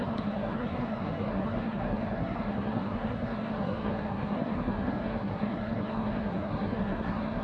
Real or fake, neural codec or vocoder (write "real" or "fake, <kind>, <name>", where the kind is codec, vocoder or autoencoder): fake, codec, SNAC